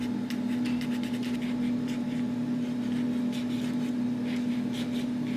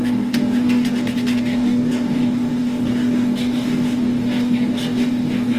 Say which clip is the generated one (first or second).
second